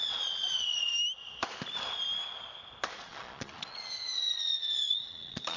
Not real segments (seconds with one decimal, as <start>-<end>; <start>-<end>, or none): 0.0-0.9; 3.0-5.6